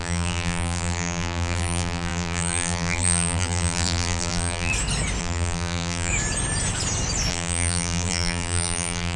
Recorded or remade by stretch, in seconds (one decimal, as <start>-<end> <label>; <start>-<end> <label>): 0.0-4.7 remade; 4.7-5.2 recorded; 5.2-6.1 remade; 6.1-7.3 recorded; 7.3-9.2 remade